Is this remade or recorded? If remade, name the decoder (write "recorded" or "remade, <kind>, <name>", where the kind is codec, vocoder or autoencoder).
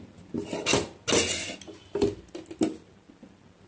recorded